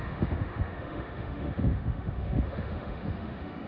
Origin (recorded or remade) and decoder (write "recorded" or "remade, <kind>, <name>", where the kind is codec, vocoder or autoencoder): remade, autoencoder, DAC-VAE